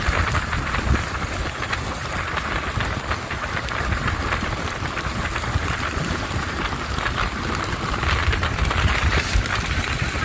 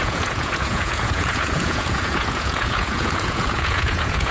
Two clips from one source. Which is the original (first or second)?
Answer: first